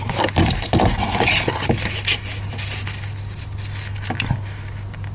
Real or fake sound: real